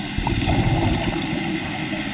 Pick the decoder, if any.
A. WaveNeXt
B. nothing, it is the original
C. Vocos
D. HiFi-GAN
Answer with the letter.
B